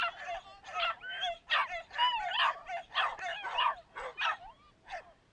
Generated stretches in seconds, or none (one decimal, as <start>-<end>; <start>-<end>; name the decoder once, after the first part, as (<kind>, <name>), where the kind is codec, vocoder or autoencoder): none